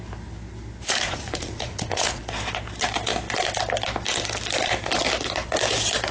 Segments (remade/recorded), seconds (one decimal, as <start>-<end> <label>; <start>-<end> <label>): 0.0-0.8 recorded; 0.8-2.2 remade; 2.2-6.1 recorded